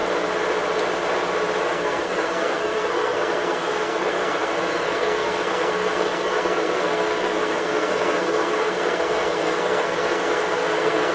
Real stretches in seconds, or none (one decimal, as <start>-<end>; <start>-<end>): 0.0-1.6